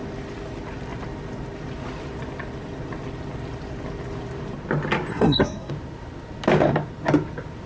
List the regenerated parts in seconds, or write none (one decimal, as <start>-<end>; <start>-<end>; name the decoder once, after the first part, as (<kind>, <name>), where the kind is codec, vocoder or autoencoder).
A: 5.1-5.7 (codec, SNAC)